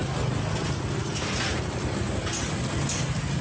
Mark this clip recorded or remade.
recorded